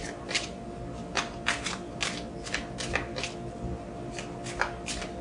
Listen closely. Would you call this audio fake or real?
real